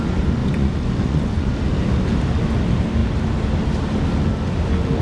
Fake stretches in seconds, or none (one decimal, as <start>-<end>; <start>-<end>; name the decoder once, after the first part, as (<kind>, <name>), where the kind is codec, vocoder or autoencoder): 0.4-1.5 (vocoder, Vocos)